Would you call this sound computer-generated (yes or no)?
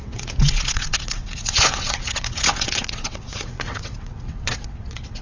yes